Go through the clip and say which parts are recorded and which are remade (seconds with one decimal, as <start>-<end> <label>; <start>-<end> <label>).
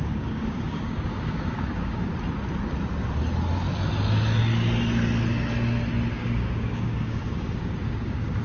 0.0-2.1 remade; 2.1-6.1 recorded; 6.1-8.4 remade